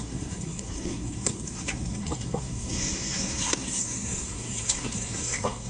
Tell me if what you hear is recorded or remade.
remade